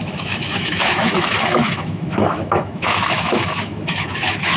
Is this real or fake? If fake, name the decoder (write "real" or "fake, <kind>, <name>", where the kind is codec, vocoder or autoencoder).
fake, autoencoder, DAC-VAE